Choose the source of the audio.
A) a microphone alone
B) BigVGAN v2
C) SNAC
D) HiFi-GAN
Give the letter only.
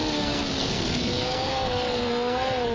C